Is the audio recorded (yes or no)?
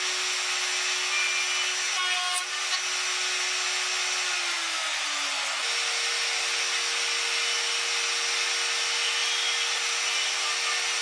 yes